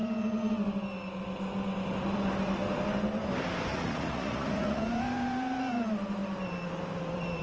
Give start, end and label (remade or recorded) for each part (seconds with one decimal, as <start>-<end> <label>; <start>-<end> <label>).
0.0-3.7 recorded; 3.7-4.8 remade; 4.8-7.4 recorded